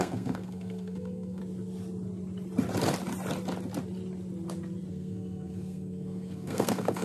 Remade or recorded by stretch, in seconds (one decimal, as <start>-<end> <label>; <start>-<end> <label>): 0.0-1.4 remade; 1.4-4.9 recorded; 4.9-7.0 remade